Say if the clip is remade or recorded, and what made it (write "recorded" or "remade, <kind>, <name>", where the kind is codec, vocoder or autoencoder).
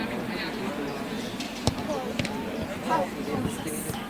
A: remade, vocoder, BigVGAN v2